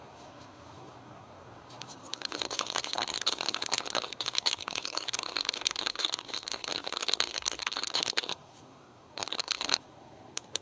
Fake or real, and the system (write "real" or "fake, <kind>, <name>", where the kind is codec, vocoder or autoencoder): fake, codec, SNAC